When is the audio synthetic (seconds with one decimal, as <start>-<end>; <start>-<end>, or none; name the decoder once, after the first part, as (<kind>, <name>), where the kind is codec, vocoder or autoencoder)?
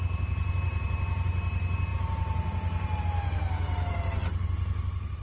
none